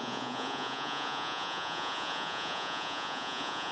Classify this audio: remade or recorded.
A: remade